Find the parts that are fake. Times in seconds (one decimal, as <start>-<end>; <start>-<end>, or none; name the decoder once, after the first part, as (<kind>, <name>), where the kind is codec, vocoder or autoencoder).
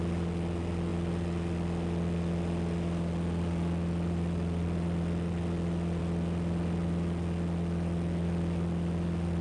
none